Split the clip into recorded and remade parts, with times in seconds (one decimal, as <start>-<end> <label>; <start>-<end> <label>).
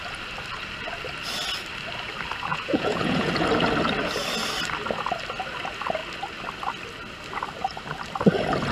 0.0-2.5 recorded; 2.5-3.3 remade; 3.3-8.7 recorded